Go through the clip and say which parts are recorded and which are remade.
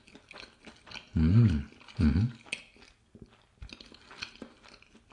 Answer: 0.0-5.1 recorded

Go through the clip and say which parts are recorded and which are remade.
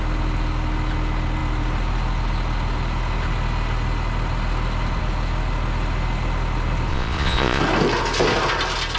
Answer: 0.0-6.9 recorded; 6.9-7.6 remade; 7.6-9.0 recorded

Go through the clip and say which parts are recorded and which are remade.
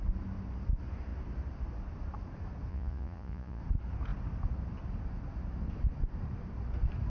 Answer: 0.0-2.7 recorded; 2.7-3.6 remade; 3.6-7.1 recorded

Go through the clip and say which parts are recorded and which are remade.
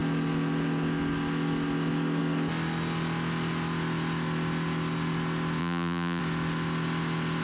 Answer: 0.0-5.6 recorded; 5.6-6.2 remade; 6.2-7.4 recorded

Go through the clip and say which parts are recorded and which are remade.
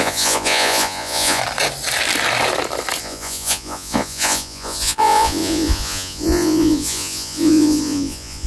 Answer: 0.0-1.4 remade; 1.4-3.0 recorded; 3.0-8.5 remade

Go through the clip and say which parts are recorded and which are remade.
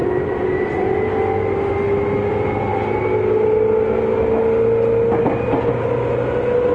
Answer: 0.0-6.7 recorded